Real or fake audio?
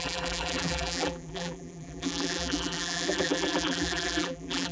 fake